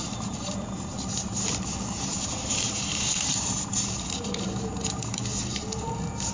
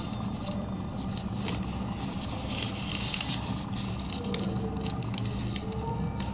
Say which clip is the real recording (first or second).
second